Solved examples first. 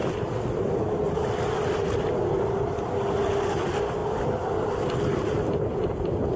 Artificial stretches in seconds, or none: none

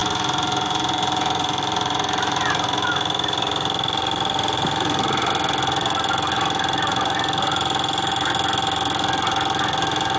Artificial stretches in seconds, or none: 0.0-5.3

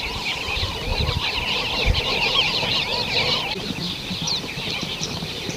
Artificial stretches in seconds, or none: 0.0-0.9; 2.0-2.9; 3.6-5.6

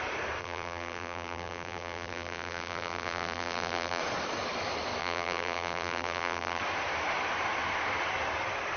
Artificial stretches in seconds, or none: 0.4-4.0; 5.0-6.6

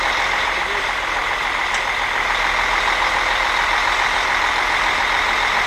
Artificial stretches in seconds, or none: 0.0-1.2; 4.6-5.7